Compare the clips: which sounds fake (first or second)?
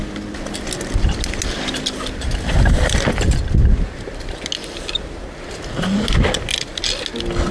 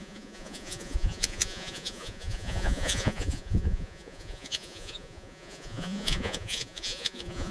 second